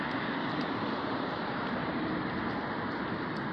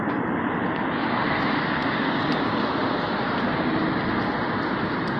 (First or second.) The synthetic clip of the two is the first